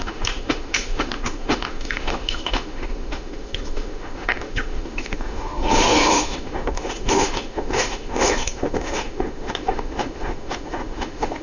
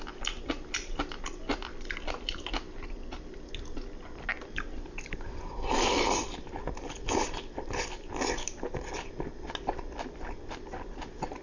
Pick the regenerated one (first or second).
first